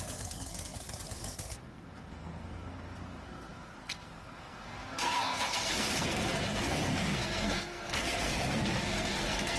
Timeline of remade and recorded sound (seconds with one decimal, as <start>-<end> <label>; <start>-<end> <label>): 0.0-9.6 remade

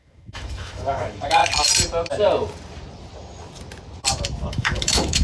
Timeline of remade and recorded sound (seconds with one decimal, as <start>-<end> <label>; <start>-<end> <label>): 0.0-1.4 remade; 1.4-4.5 recorded; 4.5-5.2 remade